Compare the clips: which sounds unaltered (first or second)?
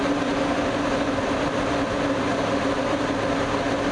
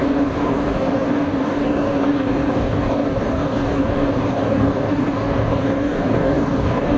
first